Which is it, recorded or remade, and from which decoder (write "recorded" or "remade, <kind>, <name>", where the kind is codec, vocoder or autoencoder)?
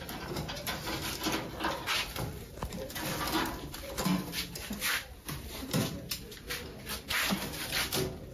remade, vocoder, BigVGAN v2